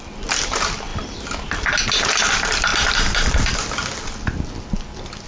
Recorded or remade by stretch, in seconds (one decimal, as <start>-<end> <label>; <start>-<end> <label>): 0.0-5.3 recorded